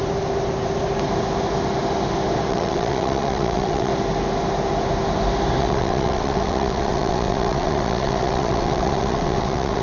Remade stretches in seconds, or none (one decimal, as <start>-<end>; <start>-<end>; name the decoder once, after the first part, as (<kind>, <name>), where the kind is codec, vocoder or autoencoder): 2.5-3.9 (vocoder, WaveNeXt); 5.6-9.8